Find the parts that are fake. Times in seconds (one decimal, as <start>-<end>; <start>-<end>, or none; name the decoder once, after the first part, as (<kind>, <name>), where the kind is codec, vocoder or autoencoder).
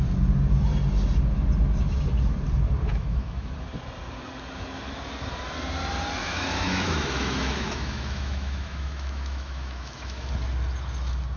2.9-3.5 (autoencoder, DAC-VAE); 6.2-10.3